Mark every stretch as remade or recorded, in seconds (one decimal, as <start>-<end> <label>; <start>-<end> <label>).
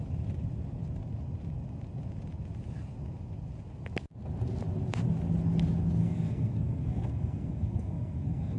0.0-6.0 recorded; 6.0-8.6 remade